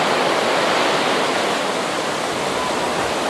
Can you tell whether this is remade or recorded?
recorded